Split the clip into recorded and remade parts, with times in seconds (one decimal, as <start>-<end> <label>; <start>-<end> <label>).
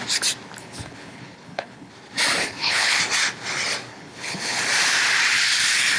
0.0-0.6 recorded; 0.6-1.9 remade; 1.9-2.4 recorded; 2.4-3.0 remade; 3.0-3.9 recorded; 3.9-4.6 remade; 4.6-6.0 recorded